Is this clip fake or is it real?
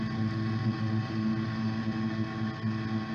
real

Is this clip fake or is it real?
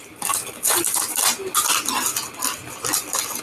real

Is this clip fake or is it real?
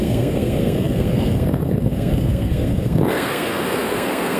fake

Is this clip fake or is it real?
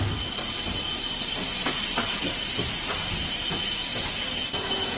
real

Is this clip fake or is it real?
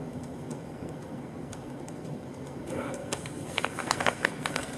fake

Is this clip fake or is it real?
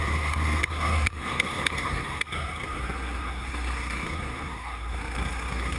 fake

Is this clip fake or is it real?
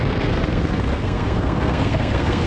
fake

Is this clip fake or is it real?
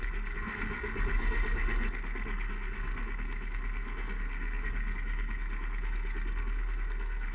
fake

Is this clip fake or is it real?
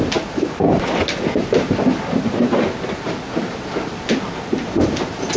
real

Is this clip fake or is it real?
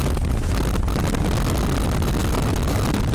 real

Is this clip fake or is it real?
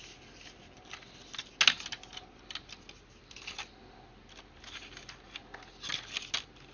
real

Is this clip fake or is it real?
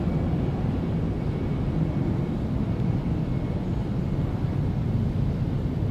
real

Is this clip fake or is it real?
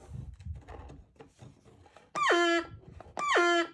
real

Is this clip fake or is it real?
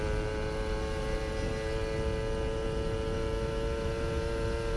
real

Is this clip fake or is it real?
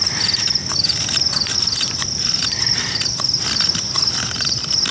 real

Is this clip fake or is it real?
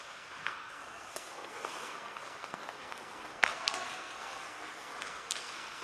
fake